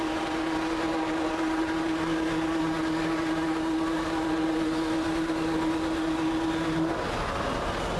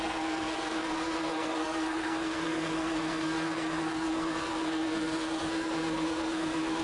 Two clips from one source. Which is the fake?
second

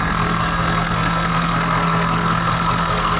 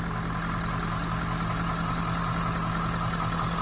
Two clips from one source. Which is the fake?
first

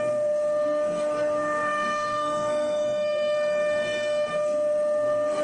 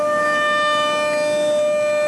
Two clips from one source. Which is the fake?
first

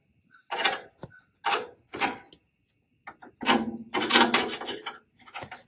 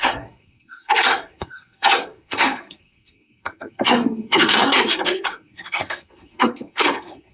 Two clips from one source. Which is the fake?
second